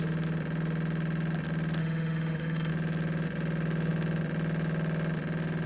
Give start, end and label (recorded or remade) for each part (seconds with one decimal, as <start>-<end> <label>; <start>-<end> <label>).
0.0-1.8 recorded; 1.8-2.7 remade; 2.7-5.7 recorded